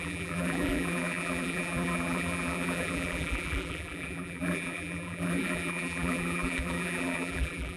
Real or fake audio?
fake